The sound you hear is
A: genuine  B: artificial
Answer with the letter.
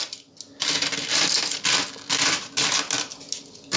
A